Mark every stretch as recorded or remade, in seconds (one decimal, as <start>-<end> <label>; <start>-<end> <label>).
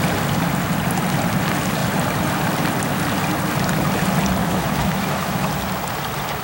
0.0-4.4 recorded; 4.4-5.5 remade; 5.5-6.4 recorded